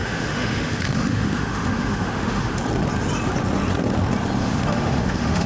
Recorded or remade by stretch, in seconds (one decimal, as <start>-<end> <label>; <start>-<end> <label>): 0.0-2.6 remade; 2.6-4.4 recorded; 4.4-5.5 remade